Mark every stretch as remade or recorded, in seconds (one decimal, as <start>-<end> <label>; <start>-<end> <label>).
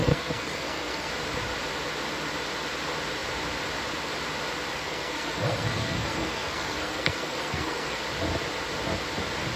0.0-1.1 remade; 1.1-4.7 recorded; 4.7-8.0 remade; 8.0-9.6 recorded